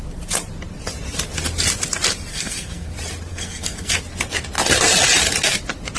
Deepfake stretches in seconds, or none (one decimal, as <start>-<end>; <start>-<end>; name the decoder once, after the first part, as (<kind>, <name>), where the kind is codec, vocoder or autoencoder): 2.3-2.9 (codec, SNAC); 3.3-3.9